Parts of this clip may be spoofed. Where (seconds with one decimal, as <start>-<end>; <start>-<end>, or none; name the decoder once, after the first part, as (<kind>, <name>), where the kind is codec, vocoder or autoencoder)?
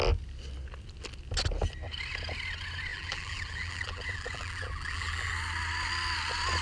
2.9-5.3 (vocoder, BigVGAN v2)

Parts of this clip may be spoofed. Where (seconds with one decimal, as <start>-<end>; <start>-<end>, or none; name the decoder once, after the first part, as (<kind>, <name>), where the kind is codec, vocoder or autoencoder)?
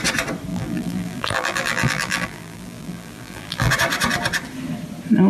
0.5-3.7 (vocoder, BigVGAN v2)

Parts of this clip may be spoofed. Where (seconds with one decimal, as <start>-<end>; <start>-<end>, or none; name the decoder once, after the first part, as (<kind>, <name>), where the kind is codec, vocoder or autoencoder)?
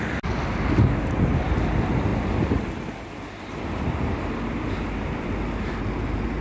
2.1-5.7 (vocoder, BigVGAN v2)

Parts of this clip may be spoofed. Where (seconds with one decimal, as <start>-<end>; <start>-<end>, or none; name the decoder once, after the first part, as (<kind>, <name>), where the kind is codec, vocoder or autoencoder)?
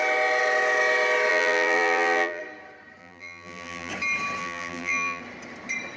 1.3-2.4 (vocoder, BigVGAN v2); 3.0-3.9; 4.4-5.2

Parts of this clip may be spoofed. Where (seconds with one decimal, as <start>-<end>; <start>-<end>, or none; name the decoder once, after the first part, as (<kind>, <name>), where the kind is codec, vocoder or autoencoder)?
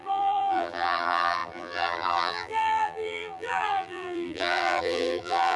0.0-5.6 (vocoder, BigVGAN v2)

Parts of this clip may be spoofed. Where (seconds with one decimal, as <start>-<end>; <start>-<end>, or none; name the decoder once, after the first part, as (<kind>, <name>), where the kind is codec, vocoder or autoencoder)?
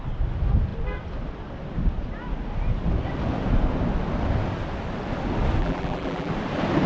5.6-6.3 (vocoder, BigVGAN v2)